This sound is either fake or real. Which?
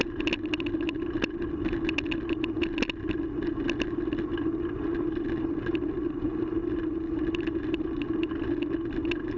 real